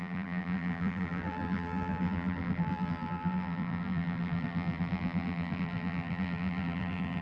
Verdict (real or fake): fake